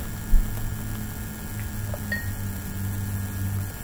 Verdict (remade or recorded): recorded